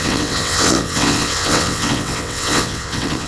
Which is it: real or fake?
fake